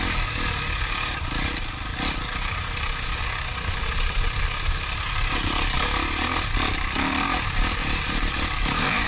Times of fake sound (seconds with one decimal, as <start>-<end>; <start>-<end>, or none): 7.8-9.1